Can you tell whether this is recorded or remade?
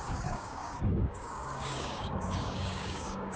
remade